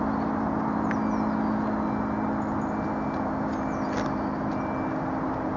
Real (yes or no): yes